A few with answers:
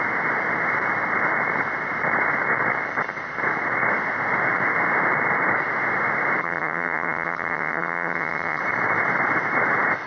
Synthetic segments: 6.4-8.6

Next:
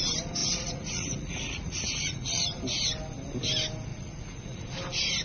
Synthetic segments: 0.4-2.6; 3.9-4.6